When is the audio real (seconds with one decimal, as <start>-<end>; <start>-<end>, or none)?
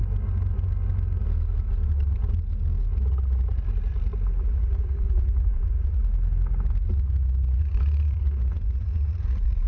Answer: 0.0-4.4; 6.0-7.6